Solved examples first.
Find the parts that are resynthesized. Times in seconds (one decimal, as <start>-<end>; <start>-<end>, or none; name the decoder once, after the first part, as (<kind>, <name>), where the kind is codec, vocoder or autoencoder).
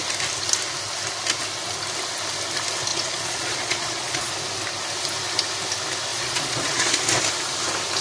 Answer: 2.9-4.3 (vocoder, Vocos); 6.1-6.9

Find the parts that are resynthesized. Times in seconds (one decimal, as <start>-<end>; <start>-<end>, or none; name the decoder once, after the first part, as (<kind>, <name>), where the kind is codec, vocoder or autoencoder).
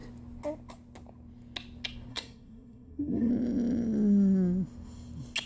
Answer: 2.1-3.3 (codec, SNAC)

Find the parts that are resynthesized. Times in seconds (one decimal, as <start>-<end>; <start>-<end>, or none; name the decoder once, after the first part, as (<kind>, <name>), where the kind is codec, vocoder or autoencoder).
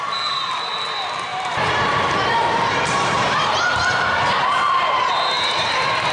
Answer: 1.3-5.0 (vocoder, BigVGAN v2)